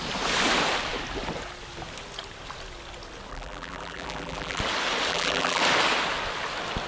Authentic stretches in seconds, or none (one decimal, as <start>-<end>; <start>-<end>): 0.0-3.3; 4.6-5.1; 5.6-6.9